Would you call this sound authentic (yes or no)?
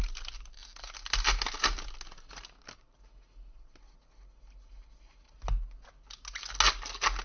yes